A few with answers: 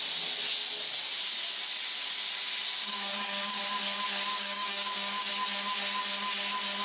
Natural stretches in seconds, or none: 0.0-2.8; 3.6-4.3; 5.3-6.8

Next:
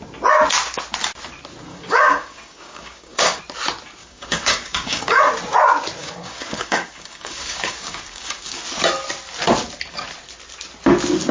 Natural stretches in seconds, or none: 0.0-1.7; 3.4-4.0; 5.2-6.0; 8.6-11.3

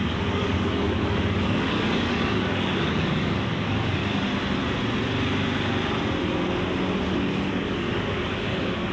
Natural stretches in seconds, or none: 4.0-7.1

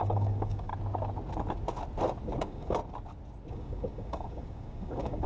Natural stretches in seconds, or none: 0.7-2.4; 2.8-3.5

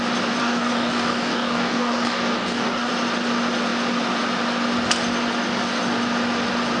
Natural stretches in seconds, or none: 0.0-0.4; 2.9-6.8

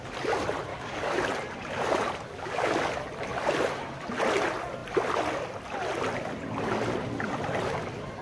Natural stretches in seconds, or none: 0.0-0.7; 1.2-2.3; 2.8-8.2

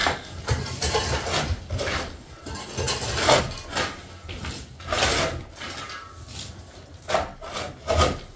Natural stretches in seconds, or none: 0.0-8.4